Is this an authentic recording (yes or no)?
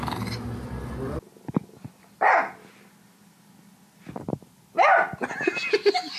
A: yes